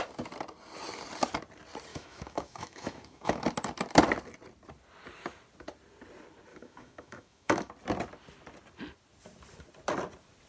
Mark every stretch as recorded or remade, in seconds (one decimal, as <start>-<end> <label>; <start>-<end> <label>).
0.0-1.9 recorded; 1.9-3.4 remade; 3.4-6.5 recorded; 6.5-7.7 remade; 7.7-10.5 recorded